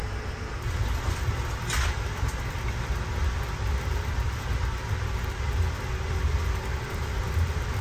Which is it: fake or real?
real